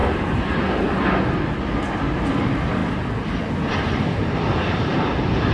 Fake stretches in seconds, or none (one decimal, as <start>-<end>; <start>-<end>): 0.0-0.5; 4.2-5.0